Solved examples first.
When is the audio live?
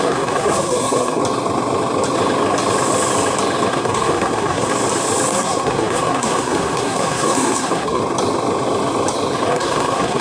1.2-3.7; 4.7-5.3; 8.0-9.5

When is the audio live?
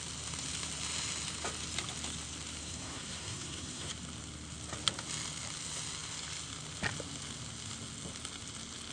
0.0-2.6; 3.9-8.9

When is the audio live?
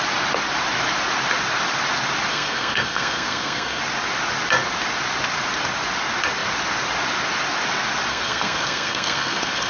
0.0-2.3; 3.8-8.1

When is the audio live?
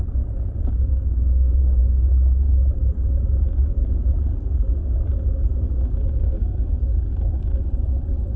0.0-0.9; 1.8-6.2; 6.8-8.4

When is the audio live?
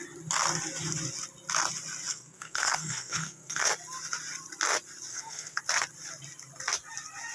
0.0-2.1; 3.7-5.1; 5.6-7.3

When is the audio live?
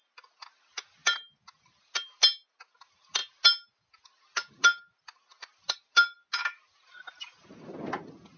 0.0-8.4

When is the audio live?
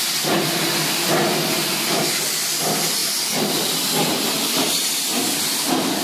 0.0-6.0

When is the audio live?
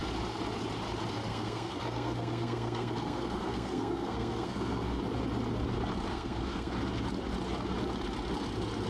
0.0-1.3; 5.0-6.1; 6.7-8.9